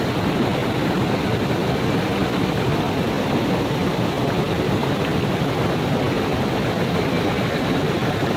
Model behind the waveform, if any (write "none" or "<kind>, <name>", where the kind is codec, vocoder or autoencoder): none